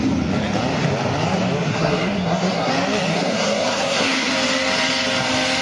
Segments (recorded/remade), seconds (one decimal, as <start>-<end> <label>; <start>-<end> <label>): 0.0-1.7 recorded; 1.7-2.7 remade; 2.7-3.1 recorded; 3.1-4.3 remade; 4.3-5.6 recorded